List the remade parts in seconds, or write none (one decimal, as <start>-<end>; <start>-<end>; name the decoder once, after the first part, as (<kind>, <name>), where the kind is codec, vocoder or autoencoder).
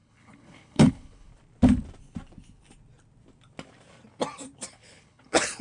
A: 0.0-1.3 (codec, HILCodec); 4.7-5.6